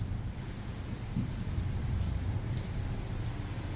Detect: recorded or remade recorded